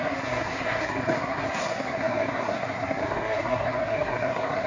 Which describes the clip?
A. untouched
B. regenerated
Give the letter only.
B